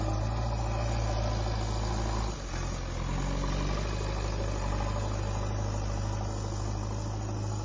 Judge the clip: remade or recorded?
recorded